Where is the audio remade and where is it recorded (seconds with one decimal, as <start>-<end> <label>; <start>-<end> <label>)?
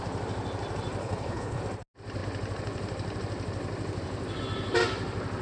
0.0-1.0 recorded; 1.0-1.6 remade; 1.6-5.4 recorded